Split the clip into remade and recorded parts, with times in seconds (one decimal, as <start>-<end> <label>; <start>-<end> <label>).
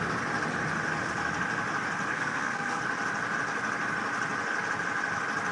0.0-2.1 recorded; 2.1-2.8 remade; 2.8-5.5 recorded